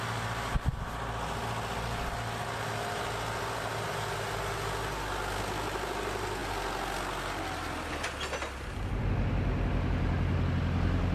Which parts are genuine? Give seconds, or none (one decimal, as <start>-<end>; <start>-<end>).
0.0-11.1